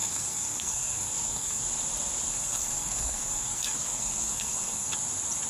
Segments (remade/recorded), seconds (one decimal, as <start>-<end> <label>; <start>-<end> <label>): 0.0-1.6 remade; 1.6-2.3 recorded; 2.3-4.9 remade; 4.9-5.5 recorded